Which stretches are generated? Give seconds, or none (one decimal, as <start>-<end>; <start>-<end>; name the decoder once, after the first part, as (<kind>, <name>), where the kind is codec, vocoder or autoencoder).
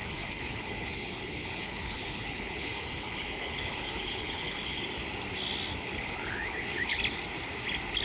0.0-4.8 (codec, HILCodec); 5.7-7.0